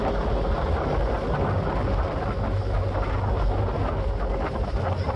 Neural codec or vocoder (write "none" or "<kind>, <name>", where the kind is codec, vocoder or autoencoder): none